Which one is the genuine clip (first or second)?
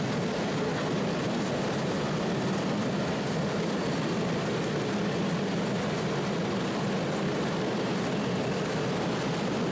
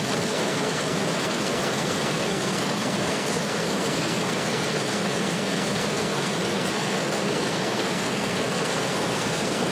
first